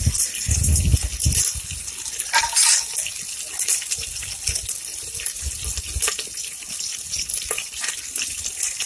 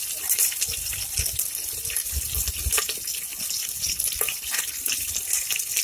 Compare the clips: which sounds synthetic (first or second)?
second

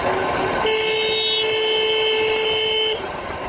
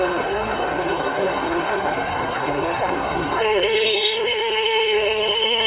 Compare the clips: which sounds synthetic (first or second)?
second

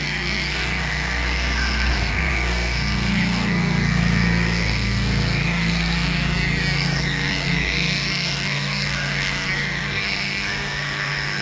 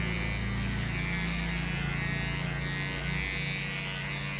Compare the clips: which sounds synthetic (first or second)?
first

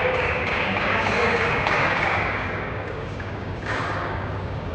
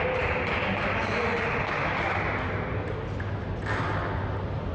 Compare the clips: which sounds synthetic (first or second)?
first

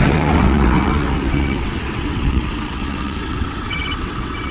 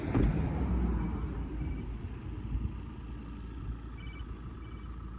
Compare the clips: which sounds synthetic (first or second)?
first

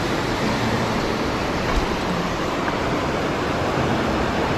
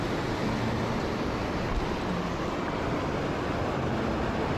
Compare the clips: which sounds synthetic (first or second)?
first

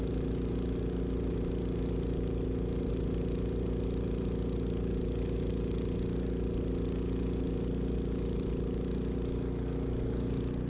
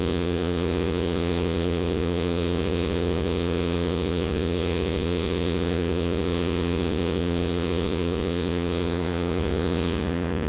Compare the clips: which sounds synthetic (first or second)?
second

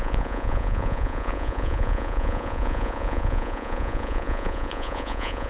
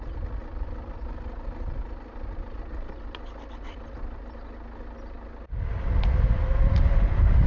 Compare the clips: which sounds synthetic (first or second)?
first